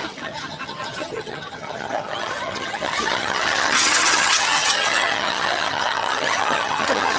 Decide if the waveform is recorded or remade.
remade